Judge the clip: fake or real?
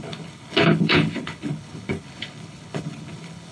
fake